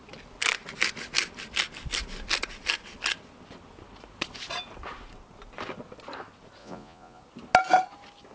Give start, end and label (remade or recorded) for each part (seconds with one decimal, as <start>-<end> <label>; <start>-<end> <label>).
0.0-6.6 recorded; 6.6-7.2 remade; 7.2-8.3 recorded